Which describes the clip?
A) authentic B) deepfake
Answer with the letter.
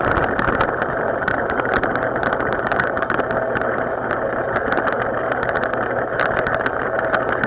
A